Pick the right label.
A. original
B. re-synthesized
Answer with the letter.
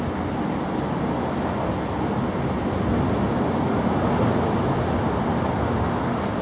A